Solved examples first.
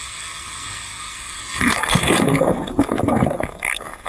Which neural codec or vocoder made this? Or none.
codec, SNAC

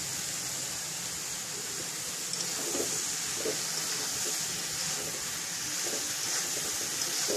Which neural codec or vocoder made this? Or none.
none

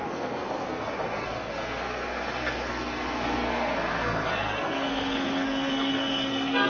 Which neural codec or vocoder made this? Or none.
codec, SNAC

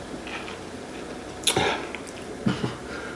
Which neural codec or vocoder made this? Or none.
none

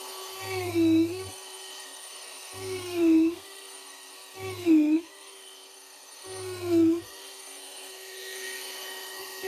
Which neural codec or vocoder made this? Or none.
codec, SNAC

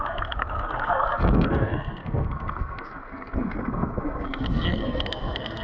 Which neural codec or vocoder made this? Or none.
codec, SNAC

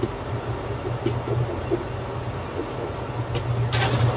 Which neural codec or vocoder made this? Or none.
none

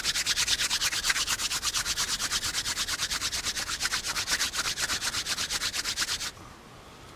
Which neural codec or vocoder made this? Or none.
none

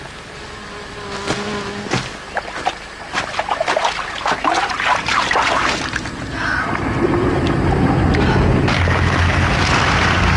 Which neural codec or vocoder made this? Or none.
none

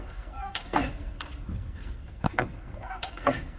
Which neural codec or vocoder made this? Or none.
codec, SNAC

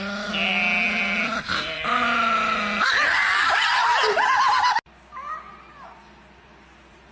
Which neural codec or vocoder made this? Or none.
none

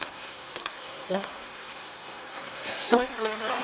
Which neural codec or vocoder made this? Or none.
codec, SNAC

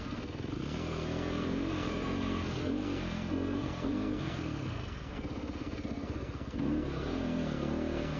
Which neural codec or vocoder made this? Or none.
codec, SNAC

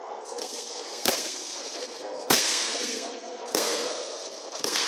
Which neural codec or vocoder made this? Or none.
codec, SNAC